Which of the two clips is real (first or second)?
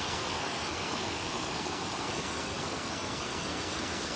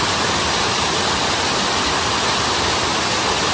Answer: second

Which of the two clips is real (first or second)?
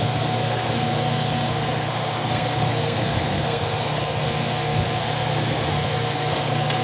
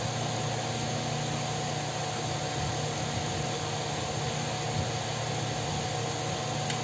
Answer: second